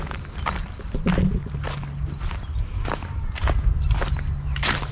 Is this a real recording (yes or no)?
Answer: yes